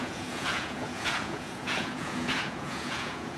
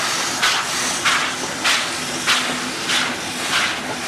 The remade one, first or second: first